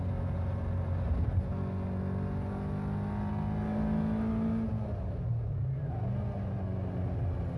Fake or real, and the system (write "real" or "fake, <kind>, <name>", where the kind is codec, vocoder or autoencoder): real